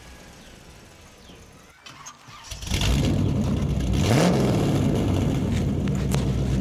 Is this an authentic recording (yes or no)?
yes